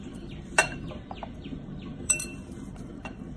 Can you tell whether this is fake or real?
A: fake